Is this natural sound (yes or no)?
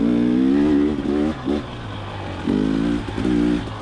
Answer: yes